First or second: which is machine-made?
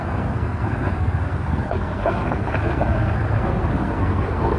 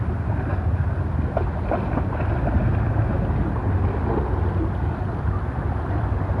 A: first